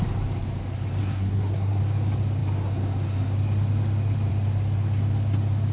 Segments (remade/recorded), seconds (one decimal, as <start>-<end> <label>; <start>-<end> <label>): 0.0-1.0 recorded; 1.0-1.8 remade; 1.8-5.7 recorded

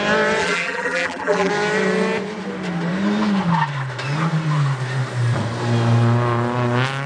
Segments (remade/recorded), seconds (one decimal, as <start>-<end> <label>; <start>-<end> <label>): 0.0-0.4 recorded; 0.4-1.5 remade; 1.5-7.1 recorded

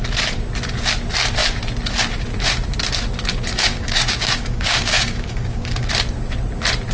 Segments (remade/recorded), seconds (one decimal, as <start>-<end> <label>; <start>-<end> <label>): 0.0-3.6 recorded; 3.6-5.9 remade; 5.9-6.9 recorded

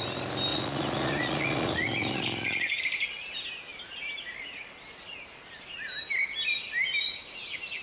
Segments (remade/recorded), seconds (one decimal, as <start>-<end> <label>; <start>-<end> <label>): 0.0-0.5 recorded; 0.5-2.8 remade; 2.8-7.8 recorded

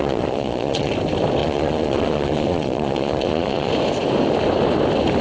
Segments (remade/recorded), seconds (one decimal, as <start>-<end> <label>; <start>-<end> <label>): 0.0-0.9 remade; 0.9-1.4 recorded; 1.4-3.7 remade; 3.7-5.2 recorded

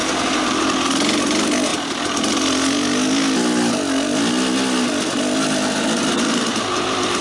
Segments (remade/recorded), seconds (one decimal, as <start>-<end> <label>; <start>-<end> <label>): 0.0-0.6 remade; 0.6-7.2 recorded

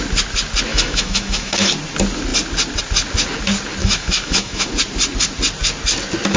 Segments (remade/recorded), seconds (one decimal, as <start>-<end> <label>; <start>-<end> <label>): 0.0-0.7 recorded; 0.7-1.7 remade; 1.7-3.8 recorded; 3.8-4.7 remade; 4.7-6.4 recorded

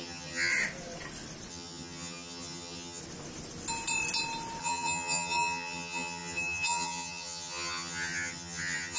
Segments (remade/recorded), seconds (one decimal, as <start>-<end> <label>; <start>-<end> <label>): 0.0-0.5 remade; 0.5-1.5 recorded; 1.5-3.0 remade; 3.0-4.6 recorded; 4.6-9.0 remade